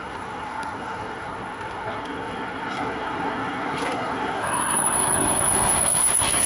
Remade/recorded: remade